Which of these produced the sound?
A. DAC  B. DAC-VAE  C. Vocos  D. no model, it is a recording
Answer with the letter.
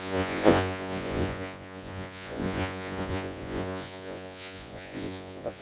C